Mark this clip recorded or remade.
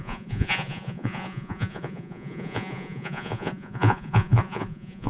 remade